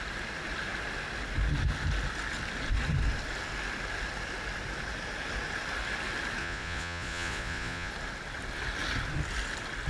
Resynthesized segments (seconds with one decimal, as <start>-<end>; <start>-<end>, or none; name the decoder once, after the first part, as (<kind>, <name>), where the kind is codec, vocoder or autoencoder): 6.4-7.9 (vocoder, Vocos)